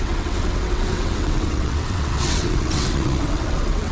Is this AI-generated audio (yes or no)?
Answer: yes